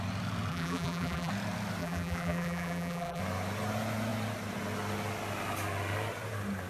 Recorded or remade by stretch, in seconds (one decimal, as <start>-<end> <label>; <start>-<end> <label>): 0.0-0.5 recorded; 0.5-1.3 remade; 1.3-1.8 recorded; 1.8-3.2 remade; 3.2-6.7 recorded